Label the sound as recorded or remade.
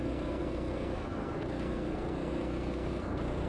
remade